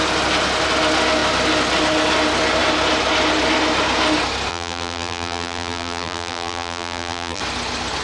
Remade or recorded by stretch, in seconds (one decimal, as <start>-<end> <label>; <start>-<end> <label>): 0.0-4.5 recorded; 4.5-7.4 remade; 7.4-8.0 recorded